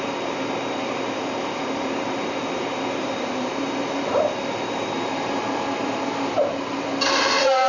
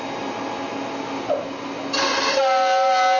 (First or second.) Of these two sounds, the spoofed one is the first